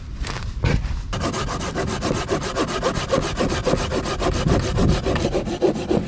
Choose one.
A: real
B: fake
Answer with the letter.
A